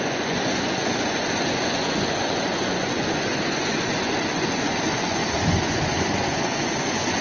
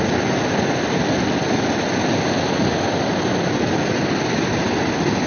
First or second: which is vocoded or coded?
first